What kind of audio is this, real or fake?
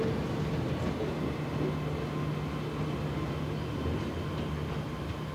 real